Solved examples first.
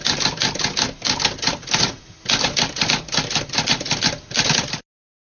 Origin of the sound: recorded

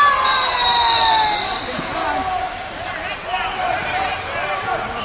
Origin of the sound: recorded